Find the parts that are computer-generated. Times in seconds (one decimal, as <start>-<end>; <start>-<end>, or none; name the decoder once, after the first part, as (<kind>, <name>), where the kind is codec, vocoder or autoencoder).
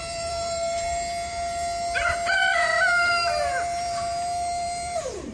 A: 0.0-2.7 (vocoder, BigVGAN v2); 3.3-5.3